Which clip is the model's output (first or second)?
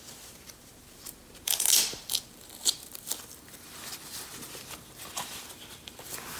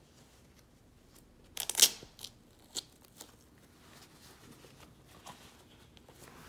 first